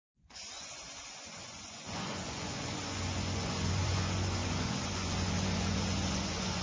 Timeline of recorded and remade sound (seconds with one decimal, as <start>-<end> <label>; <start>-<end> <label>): 0.0-6.6 remade